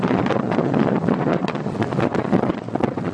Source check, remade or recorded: remade